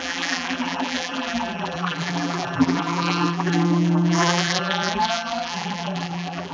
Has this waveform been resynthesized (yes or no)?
yes